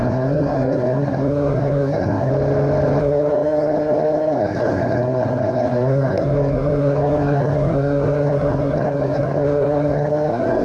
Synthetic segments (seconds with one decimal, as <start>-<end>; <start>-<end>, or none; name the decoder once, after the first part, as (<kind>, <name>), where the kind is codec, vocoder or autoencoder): 0.0-2.3 (codec, SNAC); 3.0-10.6